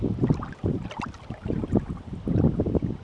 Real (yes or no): yes